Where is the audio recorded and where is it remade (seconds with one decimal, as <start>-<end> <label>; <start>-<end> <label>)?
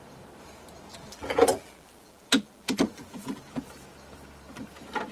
0.0-0.9 recorded; 0.9-3.6 remade; 3.6-5.1 recorded